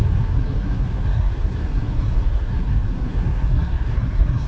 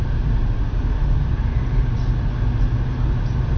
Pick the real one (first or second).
second